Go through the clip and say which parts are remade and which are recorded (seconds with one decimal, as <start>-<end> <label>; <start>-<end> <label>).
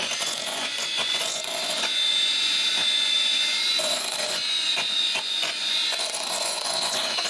0.0-7.3 remade